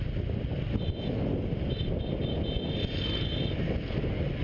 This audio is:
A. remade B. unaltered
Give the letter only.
B